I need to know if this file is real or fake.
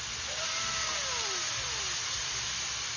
real